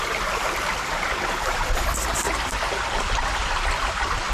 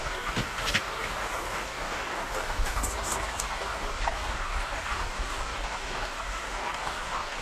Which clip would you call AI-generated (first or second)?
second